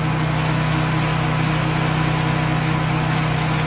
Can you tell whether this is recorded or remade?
recorded